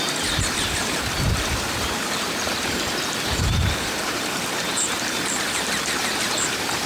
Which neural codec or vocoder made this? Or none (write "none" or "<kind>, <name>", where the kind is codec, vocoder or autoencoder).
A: vocoder, BigVGAN v2